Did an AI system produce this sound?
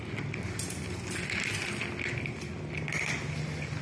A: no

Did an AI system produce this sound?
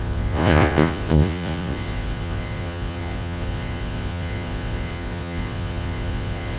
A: yes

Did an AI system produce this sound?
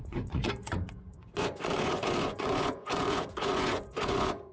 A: yes